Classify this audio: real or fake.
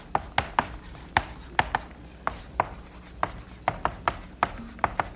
real